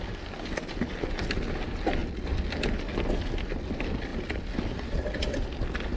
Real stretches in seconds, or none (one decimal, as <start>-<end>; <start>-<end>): 0.0-6.0